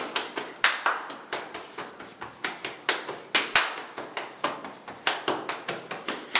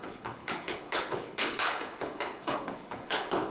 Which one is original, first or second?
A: first